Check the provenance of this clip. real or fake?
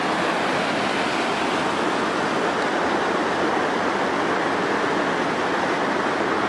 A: real